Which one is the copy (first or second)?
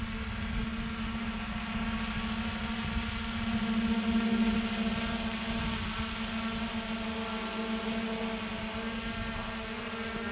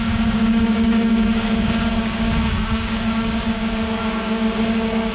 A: second